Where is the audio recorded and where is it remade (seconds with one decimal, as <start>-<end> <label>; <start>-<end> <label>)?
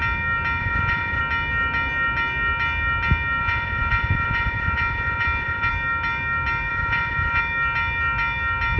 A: 0.0-0.6 recorded; 0.6-1.2 remade; 1.2-3.4 recorded; 3.4-5.7 remade; 5.7-6.7 recorded; 6.7-7.4 remade; 7.4-8.8 recorded